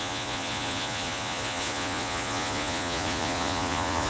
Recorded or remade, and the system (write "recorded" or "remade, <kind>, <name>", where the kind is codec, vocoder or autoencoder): remade, vocoder, Vocos